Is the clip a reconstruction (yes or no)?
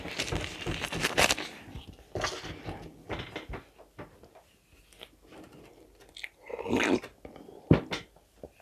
no